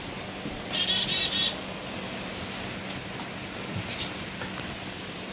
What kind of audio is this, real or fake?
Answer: fake